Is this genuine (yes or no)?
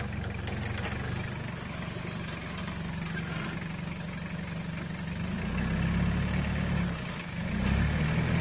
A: yes